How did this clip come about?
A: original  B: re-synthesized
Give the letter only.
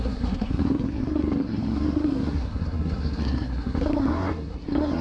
B